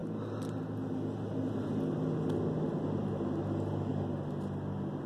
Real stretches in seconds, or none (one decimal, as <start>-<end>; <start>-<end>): 0.0-5.1